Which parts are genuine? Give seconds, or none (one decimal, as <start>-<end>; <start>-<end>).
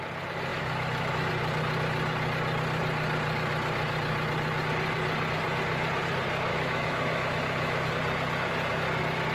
0.0-0.5; 1.3-6.5; 7.9-9.3